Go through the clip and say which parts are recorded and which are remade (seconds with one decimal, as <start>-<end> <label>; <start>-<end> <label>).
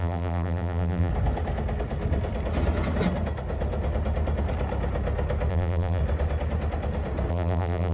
0.0-1.1 remade; 1.1-5.5 recorded; 5.5-6.0 remade; 6.0-7.3 recorded; 7.3-7.9 remade